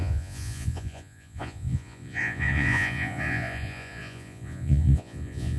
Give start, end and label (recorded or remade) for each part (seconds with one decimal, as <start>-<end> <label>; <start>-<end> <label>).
0.0-5.6 remade